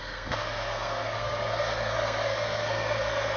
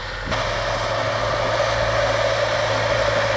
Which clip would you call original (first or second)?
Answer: second